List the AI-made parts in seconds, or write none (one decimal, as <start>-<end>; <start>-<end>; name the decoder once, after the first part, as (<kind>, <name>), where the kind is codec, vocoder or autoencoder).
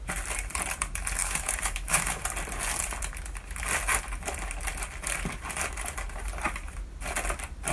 1.2-2.2 (autoencoder, DAC-VAE)